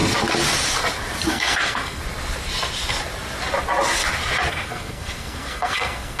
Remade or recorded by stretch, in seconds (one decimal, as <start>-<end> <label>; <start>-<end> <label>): 0.0-1.3 recorded; 1.3-2.0 remade; 2.0-4.5 recorded; 4.5-6.2 remade